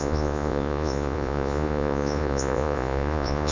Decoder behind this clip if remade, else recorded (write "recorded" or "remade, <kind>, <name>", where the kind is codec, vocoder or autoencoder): remade, vocoder, Vocos